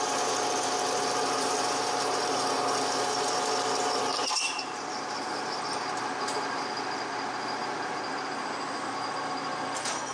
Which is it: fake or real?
real